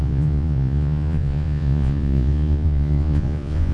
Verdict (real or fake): fake